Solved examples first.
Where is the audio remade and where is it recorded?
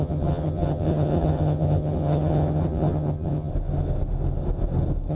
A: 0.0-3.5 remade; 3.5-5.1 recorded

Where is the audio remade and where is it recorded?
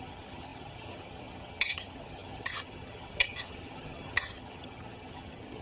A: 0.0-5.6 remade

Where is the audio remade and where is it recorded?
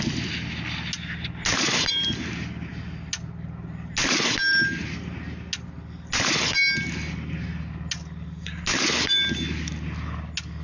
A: 0.0-10.6 recorded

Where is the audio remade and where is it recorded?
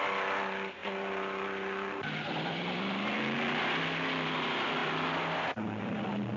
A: 0.0-6.4 recorded